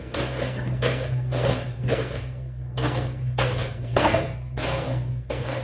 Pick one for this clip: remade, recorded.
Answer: remade